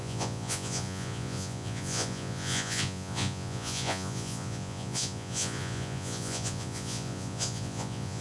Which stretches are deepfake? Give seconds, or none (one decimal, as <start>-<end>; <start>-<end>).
0.0-8.2